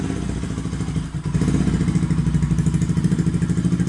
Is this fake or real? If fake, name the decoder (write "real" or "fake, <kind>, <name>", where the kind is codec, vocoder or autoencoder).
real